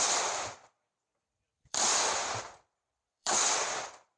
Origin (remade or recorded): remade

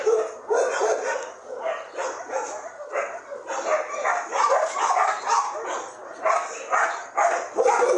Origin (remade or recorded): recorded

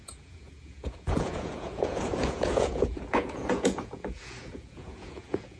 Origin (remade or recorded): remade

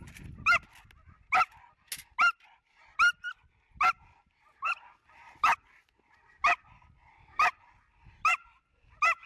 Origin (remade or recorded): recorded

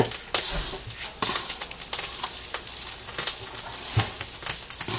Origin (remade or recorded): recorded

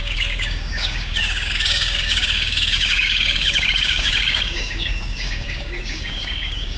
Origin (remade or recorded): remade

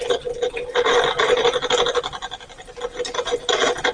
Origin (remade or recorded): recorded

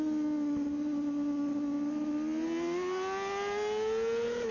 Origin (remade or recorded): recorded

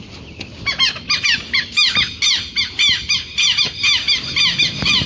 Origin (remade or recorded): recorded